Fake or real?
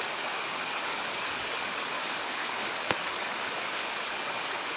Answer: fake